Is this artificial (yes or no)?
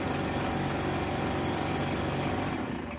no